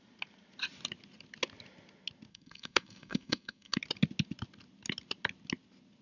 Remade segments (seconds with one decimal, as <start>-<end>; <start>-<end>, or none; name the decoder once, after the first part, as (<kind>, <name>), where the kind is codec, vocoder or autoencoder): 2.3-3.8 (codec, SNAC)